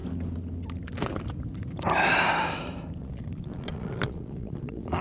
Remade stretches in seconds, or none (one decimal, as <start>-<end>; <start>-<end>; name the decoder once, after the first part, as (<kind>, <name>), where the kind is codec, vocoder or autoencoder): 3.0-5.0 (vocoder, Vocos)